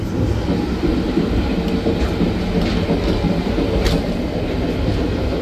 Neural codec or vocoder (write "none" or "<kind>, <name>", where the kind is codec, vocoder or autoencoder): none